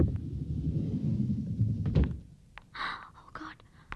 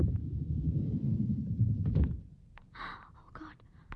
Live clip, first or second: first